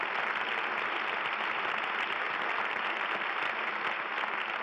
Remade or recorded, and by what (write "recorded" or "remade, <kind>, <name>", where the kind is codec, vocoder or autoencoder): recorded